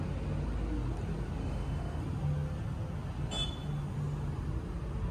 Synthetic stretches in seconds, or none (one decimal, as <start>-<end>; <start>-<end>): 1.4-2.0